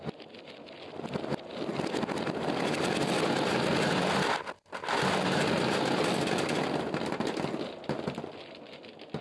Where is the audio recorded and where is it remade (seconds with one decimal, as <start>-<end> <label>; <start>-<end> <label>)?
0.0-1.7 recorded; 1.7-6.1 remade; 6.1-9.2 recorded